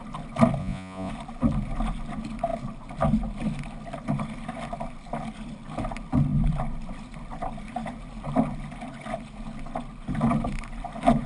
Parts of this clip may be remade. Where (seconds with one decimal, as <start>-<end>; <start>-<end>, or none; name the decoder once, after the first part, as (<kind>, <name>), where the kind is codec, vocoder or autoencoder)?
0.6-1.1 (vocoder, Vocos)